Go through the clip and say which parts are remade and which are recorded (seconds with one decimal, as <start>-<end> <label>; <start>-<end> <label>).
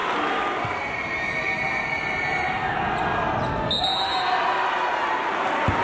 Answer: 0.0-5.8 recorded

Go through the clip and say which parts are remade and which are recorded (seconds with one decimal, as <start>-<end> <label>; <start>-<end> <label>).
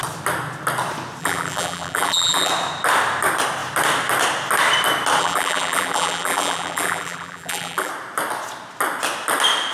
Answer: 0.0-1.2 recorded; 1.2-2.5 remade; 2.5-5.2 recorded; 5.2-7.9 remade; 7.9-9.7 recorded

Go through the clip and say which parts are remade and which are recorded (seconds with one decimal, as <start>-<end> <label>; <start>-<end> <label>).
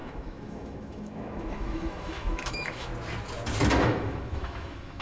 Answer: 0.0-2.9 remade; 2.9-3.8 recorded; 3.8-5.0 remade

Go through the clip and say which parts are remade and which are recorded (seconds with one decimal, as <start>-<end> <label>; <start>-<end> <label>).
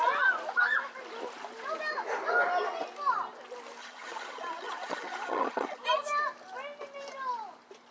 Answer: 0.0-3.8 recorded; 3.8-5.8 remade; 5.8-7.9 recorded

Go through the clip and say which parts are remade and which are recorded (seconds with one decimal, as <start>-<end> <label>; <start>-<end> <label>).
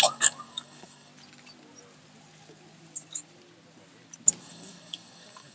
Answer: 0.0-1.1 remade; 1.1-4.4 recorded; 4.4-5.5 remade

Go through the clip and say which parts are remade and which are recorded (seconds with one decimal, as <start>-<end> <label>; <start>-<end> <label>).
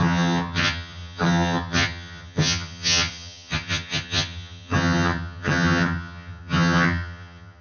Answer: 0.0-7.6 remade